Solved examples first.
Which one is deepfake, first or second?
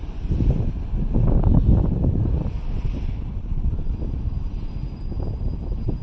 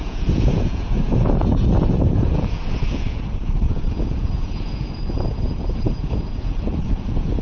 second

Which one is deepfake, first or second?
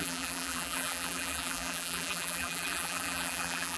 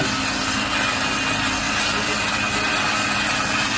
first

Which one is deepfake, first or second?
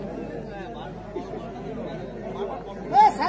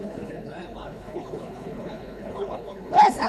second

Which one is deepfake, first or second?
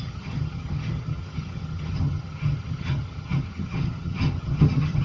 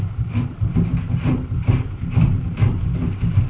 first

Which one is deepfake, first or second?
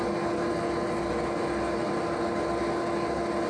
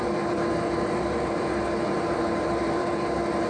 second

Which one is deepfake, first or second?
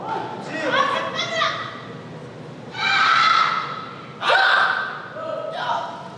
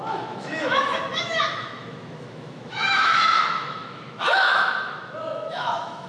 second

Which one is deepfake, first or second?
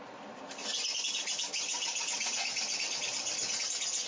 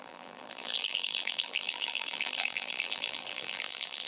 second